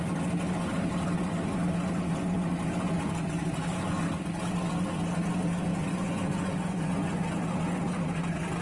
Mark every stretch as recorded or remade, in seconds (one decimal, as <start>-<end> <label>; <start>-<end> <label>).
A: 0.0-5.7 recorded; 5.7-7.3 remade; 7.3-8.6 recorded